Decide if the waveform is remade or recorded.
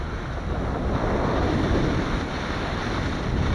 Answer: recorded